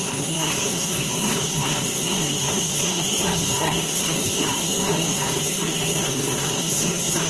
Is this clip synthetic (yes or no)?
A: yes